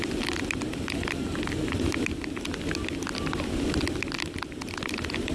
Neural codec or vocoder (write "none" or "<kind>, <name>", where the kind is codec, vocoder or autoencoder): none